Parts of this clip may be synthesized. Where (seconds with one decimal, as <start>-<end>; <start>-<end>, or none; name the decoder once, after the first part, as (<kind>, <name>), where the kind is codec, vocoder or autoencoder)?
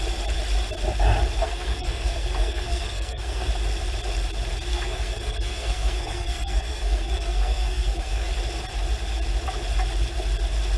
1.4-3.5 (codec, SNAC); 4.7-8.3